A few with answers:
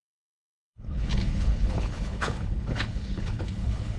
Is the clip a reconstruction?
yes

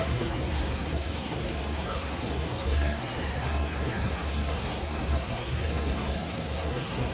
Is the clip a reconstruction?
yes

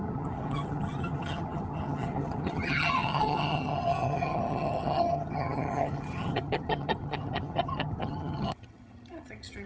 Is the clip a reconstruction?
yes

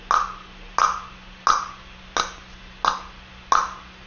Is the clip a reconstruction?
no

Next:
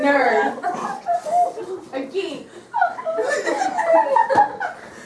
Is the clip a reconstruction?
no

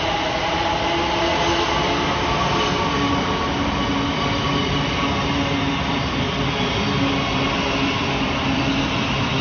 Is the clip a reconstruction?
no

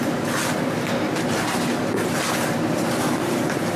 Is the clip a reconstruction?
no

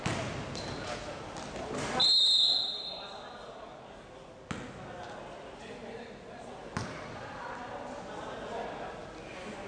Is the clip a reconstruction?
no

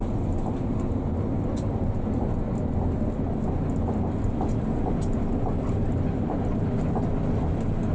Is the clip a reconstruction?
no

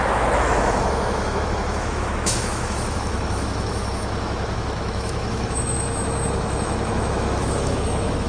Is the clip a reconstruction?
yes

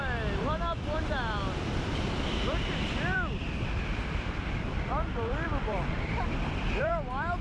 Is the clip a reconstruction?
yes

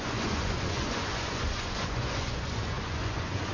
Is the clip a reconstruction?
yes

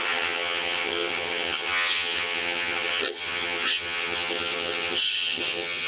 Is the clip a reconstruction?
yes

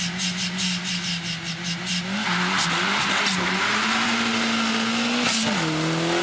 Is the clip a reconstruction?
no